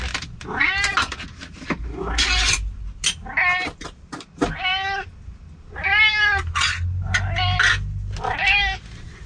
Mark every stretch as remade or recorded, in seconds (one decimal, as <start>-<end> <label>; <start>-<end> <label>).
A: 0.0-9.3 recorded